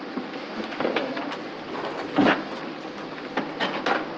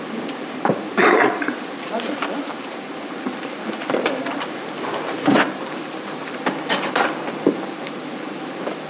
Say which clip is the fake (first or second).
second